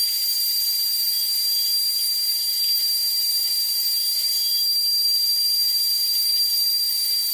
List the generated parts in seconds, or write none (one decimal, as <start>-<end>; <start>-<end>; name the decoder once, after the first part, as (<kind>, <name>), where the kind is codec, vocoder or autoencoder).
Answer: 0.0-7.3 (vocoder, BigVGAN v2)